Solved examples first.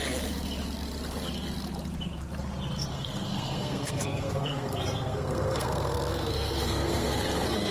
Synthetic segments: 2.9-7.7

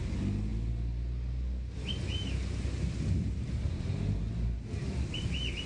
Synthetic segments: none

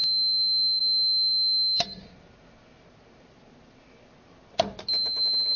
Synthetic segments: none

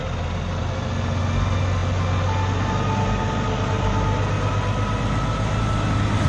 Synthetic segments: none

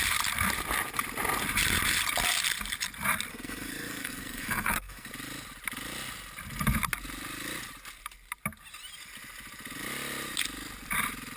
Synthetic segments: 3.3-5.1

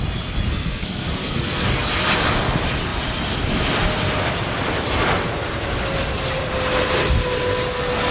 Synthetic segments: 0.5-1.7

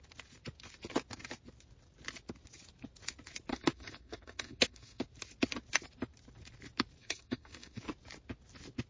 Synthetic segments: 3.5-5.0; 7.0-7.8

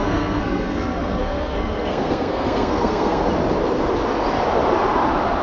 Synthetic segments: 0.0-3.2